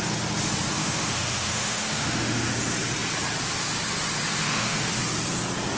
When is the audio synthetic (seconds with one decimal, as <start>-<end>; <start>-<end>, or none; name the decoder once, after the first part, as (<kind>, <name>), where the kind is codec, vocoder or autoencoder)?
0.8-2.6 (autoencoder, DAC-VAE); 4.4-5.0